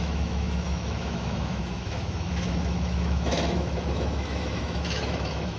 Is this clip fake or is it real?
fake